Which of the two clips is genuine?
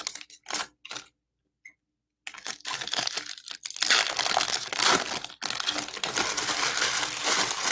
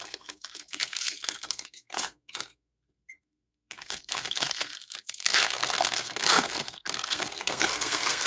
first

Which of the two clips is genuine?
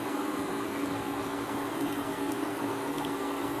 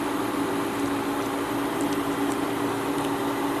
second